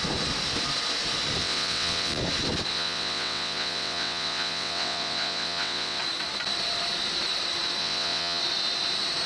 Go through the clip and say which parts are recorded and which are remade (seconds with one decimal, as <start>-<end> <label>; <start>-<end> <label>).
0.0-1.4 recorded; 1.4-2.2 remade; 2.2-2.7 recorded; 2.7-6.0 remade; 6.0-7.8 recorded; 7.8-8.4 remade; 8.4-9.3 recorded